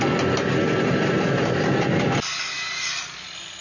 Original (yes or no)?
yes